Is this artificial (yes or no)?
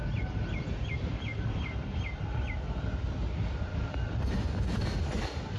no